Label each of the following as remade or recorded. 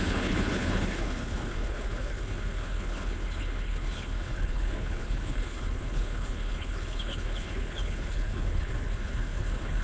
remade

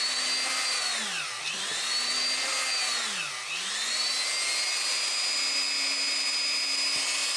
recorded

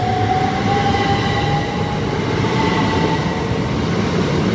recorded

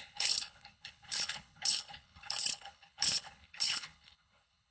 remade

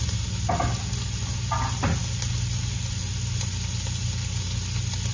recorded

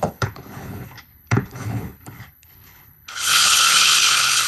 remade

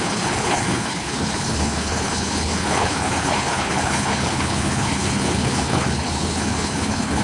remade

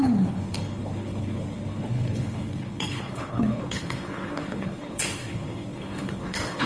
remade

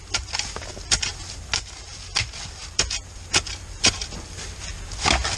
recorded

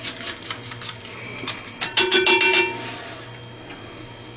recorded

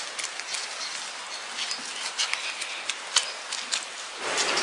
recorded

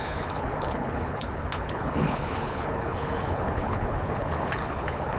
remade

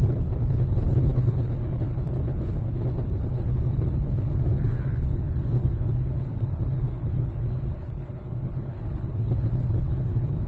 remade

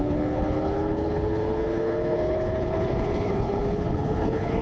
remade